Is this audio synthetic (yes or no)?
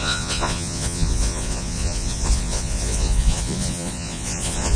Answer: yes